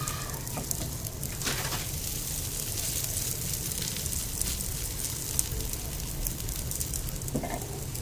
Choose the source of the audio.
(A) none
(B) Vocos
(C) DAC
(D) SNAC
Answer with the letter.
A